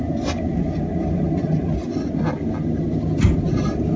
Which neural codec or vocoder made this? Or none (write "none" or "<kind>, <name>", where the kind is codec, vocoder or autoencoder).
none